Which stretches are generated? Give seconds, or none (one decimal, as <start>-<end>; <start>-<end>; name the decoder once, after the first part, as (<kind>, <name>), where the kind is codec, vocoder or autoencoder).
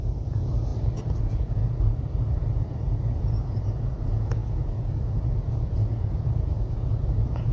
0.0-0.7 (vocoder, Vocos); 1.2-1.6; 3.2-7.5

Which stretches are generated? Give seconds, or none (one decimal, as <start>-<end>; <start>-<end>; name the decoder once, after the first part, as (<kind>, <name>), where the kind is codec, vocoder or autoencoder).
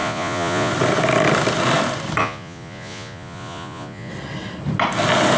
0.0-0.7 (vocoder, Vocos); 2.2-4.1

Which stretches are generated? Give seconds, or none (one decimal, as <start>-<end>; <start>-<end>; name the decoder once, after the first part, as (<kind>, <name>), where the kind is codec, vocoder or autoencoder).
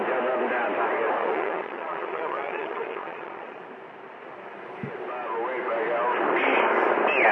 1.2-3.6 (vocoder, Vocos)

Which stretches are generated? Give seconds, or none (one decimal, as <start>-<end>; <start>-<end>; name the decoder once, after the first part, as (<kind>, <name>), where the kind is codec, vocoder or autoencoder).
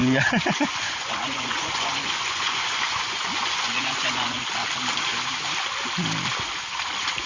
0.0-4.4 (vocoder, Vocos)